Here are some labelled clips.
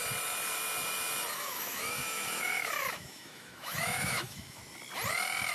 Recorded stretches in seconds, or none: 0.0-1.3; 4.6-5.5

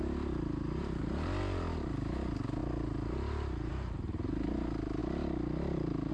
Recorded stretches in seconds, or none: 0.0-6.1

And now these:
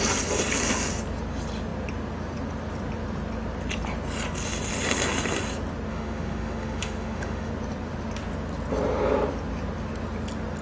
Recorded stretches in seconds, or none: 0.0-5.9; 7.5-10.6

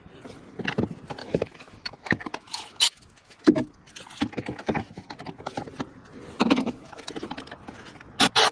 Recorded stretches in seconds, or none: 0.0-1.2; 3.4-6.4; 7.1-8.5